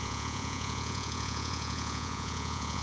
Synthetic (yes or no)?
yes